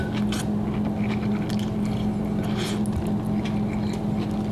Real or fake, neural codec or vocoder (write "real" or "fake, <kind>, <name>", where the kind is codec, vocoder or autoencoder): real